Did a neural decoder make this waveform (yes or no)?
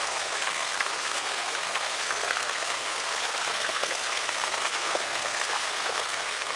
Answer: yes